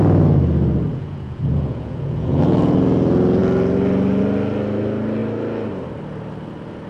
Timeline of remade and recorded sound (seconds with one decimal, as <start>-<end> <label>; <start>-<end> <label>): 0.0-0.9 recorded; 0.9-2.8 remade; 2.8-6.9 recorded